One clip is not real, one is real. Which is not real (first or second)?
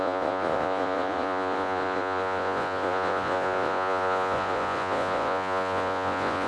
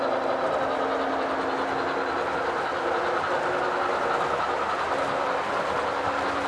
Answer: first